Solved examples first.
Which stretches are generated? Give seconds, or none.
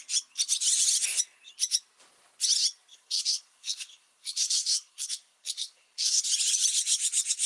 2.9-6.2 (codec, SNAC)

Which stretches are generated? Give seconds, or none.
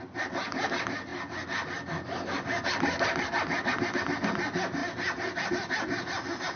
none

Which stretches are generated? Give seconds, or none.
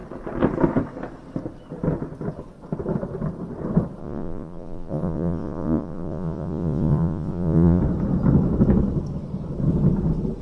4.0-7.8 (vocoder, Vocos)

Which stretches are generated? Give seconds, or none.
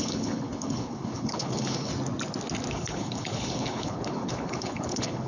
0.0-1.9 (codec, HILCodec); 2.7-5.3